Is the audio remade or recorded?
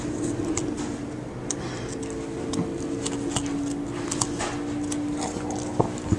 recorded